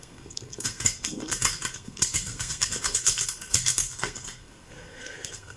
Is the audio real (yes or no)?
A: no